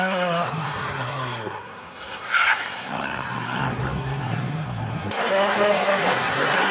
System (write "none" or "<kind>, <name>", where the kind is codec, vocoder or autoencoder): codec, SNAC